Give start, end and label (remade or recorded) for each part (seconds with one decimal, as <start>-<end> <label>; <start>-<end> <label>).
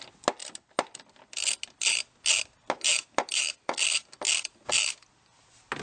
0.0-5.8 recorded